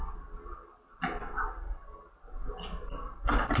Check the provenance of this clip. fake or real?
real